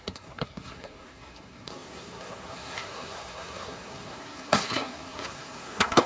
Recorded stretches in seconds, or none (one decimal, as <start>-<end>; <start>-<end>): none